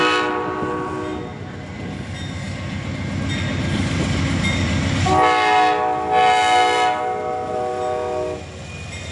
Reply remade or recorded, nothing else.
recorded